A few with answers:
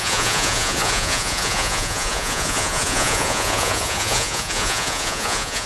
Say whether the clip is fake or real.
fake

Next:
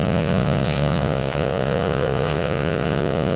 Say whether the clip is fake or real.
fake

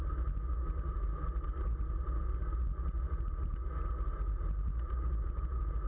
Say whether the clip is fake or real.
real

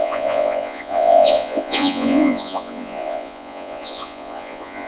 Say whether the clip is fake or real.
fake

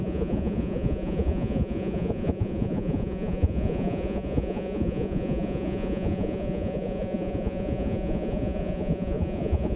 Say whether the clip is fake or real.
fake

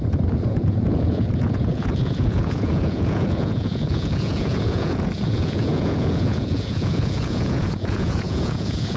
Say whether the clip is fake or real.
fake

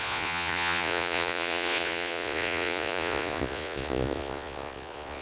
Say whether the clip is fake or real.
fake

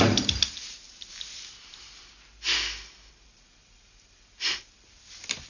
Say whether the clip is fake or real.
real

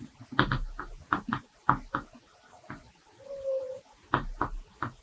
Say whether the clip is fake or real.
real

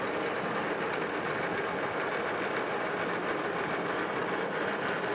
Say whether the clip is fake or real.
real